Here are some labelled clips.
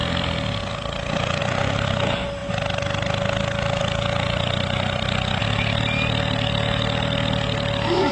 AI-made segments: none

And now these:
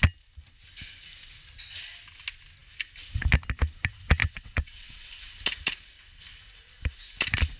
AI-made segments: 4.2-5.3 (vocoder, WaveNeXt)

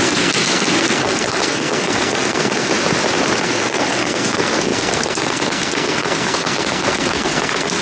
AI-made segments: 0.0-2.7 (codec, SNAC); 3.4-7.8

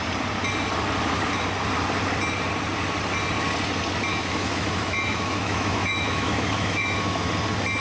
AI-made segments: 4.1-7.3 (autoencoder, DAC-VAE)

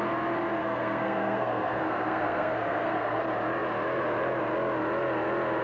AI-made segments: 0.6-3.2 (codec, SNAC)

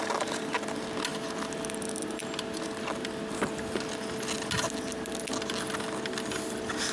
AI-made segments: none

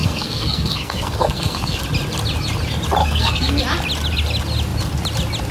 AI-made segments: 0.0-1.8 (codec, SNAC); 3.0-3.6